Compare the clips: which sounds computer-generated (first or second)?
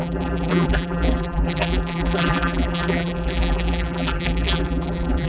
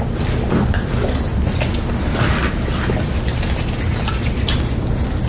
first